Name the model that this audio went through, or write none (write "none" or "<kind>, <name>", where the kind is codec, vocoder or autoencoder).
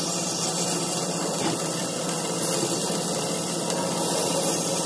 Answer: none